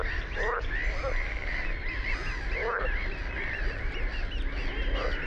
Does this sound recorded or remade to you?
recorded